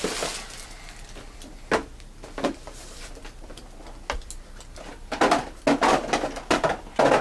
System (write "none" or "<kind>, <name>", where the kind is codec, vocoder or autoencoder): none